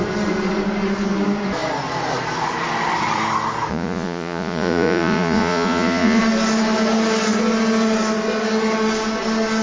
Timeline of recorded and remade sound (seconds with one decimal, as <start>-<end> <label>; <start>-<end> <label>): 0.0-3.7 recorded; 3.7-6.2 remade; 6.2-9.6 recorded